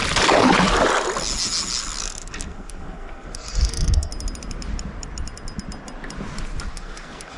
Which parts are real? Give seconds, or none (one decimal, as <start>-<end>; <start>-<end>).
0.0-2.0; 4.1-6.7